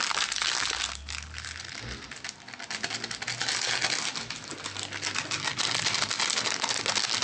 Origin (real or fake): real